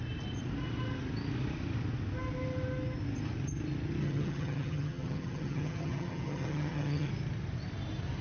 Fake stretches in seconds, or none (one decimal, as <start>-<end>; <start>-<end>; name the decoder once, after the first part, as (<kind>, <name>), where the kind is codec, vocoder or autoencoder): 4.0-7.1 (vocoder, HiFi-GAN)

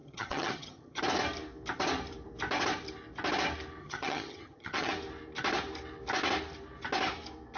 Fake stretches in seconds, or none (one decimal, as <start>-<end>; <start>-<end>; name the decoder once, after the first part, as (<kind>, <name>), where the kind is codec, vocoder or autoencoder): 0.0-1.0 (vocoder, HiFi-GAN); 3.8-4.9

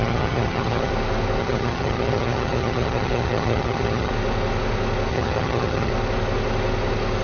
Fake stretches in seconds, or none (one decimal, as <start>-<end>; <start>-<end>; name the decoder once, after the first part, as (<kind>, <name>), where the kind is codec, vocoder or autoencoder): 0.0-0.9 (vocoder, HiFi-GAN); 1.4-4.1; 5.1-5.9